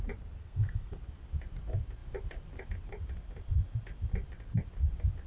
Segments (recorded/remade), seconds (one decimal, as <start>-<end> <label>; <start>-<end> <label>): 0.0-0.4 recorded; 0.4-1.0 remade; 1.0-5.3 recorded